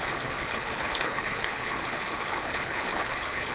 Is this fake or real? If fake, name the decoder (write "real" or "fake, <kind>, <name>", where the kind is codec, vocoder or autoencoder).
fake, codec, HILCodec